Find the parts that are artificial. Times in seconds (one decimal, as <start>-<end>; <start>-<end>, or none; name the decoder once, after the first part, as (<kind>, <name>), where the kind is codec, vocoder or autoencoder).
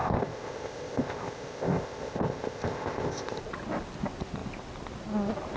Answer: 0.0-3.4 (codec, ZipCodec)